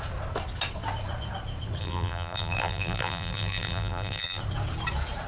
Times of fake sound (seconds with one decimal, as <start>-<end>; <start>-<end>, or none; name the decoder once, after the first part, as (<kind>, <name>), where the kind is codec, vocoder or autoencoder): 1.8-4.4 (vocoder, BigVGAN v2)